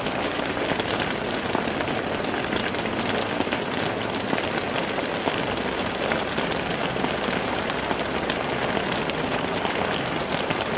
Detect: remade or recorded recorded